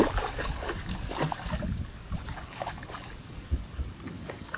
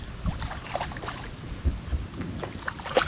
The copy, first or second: first